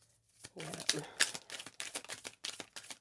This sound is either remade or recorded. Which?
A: recorded